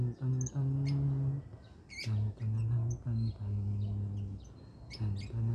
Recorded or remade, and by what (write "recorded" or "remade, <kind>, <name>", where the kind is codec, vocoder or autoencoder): recorded